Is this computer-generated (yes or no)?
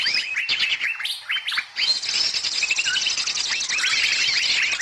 no